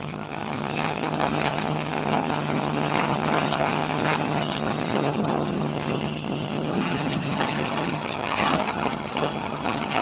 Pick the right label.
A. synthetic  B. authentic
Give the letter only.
A